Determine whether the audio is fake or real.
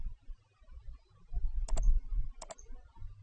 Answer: real